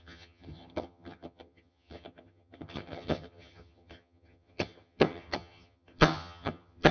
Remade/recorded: remade